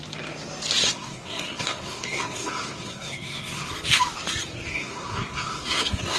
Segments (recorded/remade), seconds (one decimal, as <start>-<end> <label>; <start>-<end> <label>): 0.0-0.8 recorded; 0.8-3.7 remade; 3.7-4.7 recorded; 4.7-6.2 remade